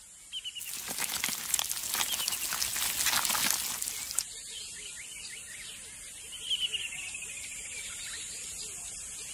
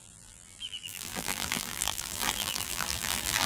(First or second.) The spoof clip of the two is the second